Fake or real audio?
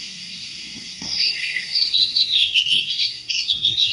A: fake